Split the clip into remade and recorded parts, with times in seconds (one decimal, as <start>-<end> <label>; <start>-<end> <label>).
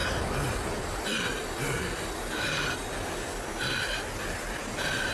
0.0-5.1 recorded